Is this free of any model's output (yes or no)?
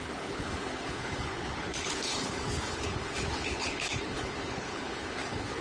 no